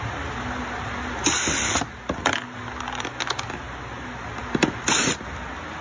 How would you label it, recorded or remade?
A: recorded